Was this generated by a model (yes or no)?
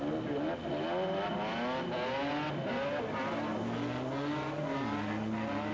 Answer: no